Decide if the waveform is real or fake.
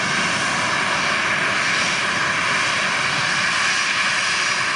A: real